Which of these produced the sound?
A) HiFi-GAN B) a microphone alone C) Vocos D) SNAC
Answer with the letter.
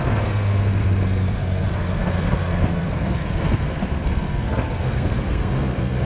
D